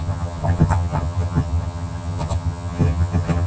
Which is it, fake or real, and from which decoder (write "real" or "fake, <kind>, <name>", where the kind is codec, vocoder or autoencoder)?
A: fake, vocoder, HiFi-GAN